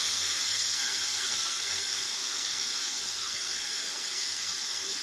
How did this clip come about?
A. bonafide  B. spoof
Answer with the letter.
B